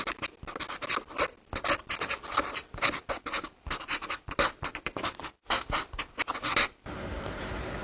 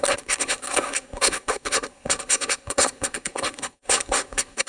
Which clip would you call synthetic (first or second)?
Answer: second